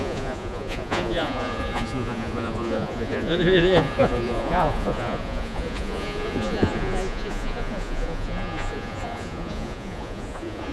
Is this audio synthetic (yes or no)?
yes